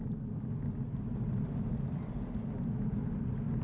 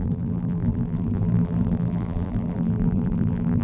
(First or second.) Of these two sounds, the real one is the first